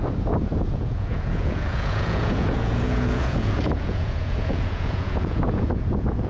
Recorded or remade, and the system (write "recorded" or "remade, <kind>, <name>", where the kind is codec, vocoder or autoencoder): remade, vocoder, Vocos